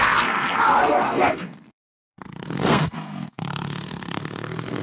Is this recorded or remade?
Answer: remade